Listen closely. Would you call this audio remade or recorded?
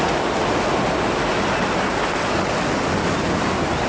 recorded